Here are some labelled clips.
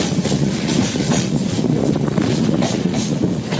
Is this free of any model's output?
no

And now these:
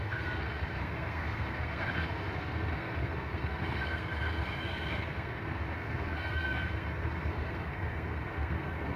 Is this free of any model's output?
no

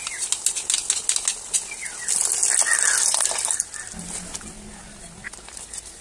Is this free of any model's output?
yes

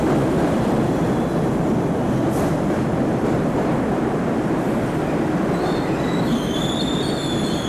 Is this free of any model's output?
no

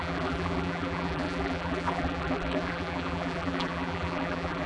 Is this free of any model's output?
no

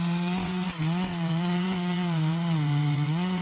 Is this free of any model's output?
no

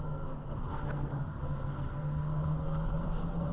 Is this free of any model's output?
no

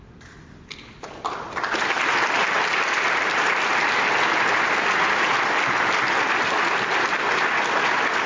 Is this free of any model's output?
yes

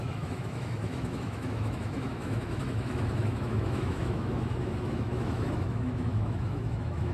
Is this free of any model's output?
no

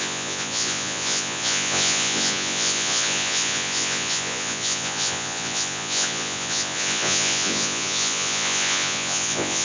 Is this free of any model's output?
no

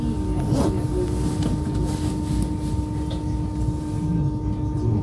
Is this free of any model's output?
yes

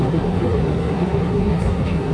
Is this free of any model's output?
no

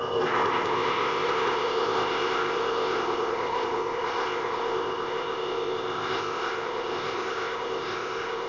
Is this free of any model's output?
no